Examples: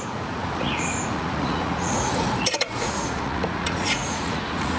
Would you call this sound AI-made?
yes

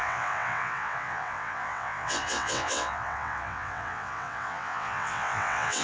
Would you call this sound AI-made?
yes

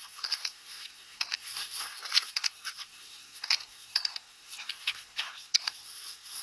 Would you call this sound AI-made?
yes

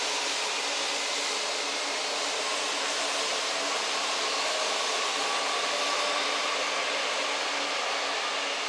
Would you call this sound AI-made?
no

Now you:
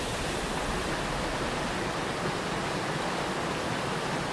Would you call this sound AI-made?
no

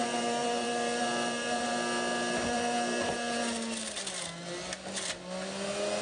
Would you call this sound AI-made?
no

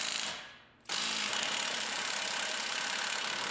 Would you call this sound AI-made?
yes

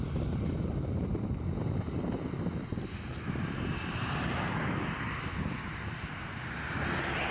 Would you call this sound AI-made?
no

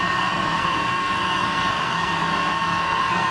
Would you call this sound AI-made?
yes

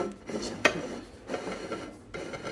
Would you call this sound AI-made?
no